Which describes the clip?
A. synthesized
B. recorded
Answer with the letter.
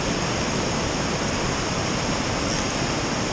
B